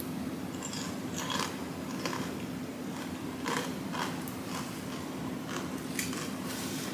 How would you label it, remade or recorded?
recorded